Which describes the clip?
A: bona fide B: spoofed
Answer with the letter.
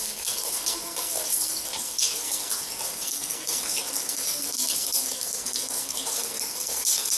B